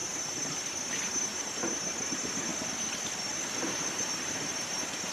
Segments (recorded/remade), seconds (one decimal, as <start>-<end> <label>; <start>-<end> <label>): 0.0-0.7 remade; 0.7-2.5 recorded; 2.5-4.1 remade; 4.1-5.1 recorded